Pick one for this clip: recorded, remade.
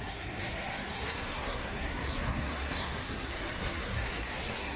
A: remade